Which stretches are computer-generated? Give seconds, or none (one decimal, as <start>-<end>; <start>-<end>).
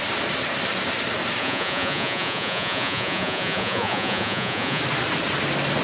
1.4-4.8